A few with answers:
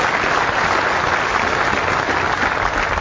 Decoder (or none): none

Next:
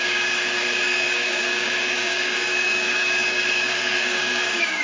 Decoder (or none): codec, DAC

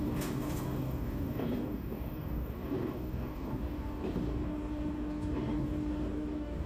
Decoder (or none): codec, DAC